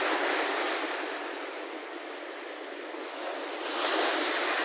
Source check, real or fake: fake